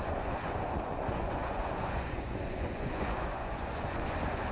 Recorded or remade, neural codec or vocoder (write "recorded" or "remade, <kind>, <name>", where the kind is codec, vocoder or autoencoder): remade, vocoder, Vocos